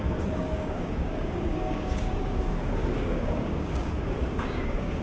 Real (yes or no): no